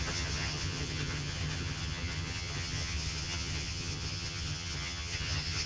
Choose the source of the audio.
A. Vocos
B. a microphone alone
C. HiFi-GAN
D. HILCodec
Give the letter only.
C